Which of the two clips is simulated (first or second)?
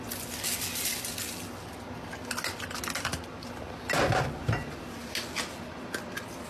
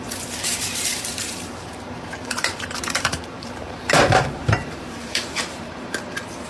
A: second